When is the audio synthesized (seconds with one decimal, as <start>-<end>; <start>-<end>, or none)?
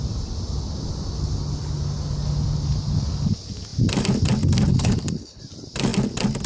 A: 4.7-5.4